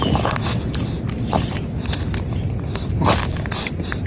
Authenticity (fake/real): real